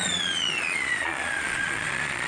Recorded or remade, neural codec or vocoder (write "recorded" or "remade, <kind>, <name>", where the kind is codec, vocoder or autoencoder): remade, vocoder, Vocos